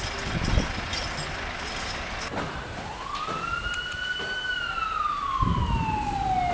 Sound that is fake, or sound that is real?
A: real